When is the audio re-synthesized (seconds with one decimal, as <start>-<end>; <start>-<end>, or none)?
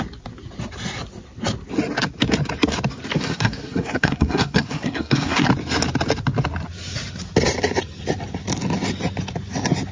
3.1-5.5